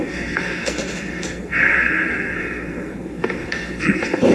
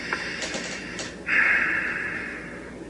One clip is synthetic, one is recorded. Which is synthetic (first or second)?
first